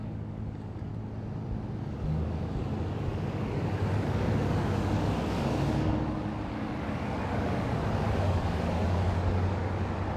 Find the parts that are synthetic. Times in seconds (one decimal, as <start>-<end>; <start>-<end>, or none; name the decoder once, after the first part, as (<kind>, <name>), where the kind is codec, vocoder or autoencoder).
0.0-0.9 (codec, DAC); 1.8-10.2